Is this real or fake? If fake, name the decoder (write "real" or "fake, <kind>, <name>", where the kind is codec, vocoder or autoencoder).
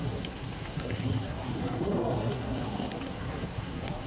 fake, codec, SNAC